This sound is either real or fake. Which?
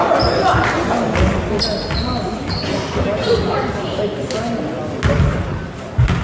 real